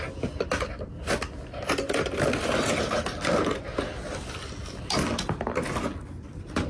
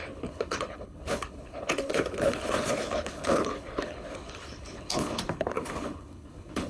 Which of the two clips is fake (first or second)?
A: second